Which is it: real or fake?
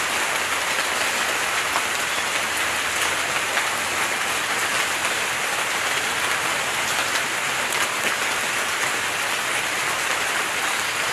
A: real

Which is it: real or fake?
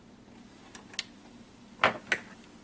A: real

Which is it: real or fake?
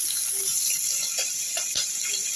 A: real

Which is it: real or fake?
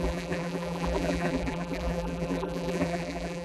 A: fake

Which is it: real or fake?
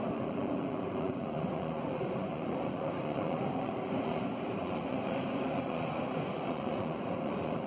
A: fake